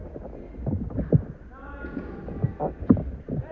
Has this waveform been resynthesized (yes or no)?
no